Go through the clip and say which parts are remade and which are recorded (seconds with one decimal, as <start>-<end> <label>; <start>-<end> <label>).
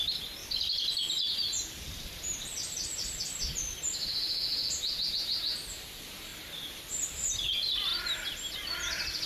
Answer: 0.0-4.5 recorded; 4.5-5.1 remade; 5.1-9.3 recorded